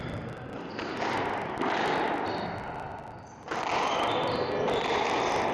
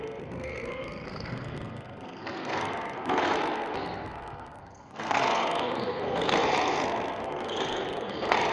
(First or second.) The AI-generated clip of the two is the second